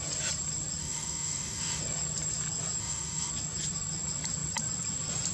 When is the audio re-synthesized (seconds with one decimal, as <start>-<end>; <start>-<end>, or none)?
0.8-1.8; 2.8-3.3